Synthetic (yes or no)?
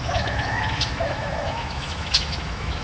yes